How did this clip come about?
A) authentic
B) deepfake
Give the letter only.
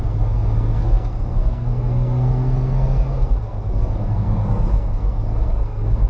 B